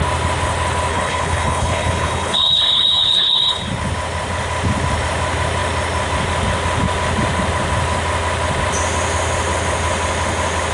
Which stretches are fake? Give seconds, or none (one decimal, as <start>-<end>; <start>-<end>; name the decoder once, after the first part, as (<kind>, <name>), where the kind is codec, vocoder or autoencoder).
0.9-3.7 (codec, HILCodec)